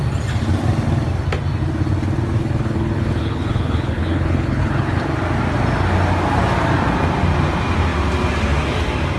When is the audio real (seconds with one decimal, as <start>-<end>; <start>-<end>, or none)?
0.0-2.4; 5.1-9.2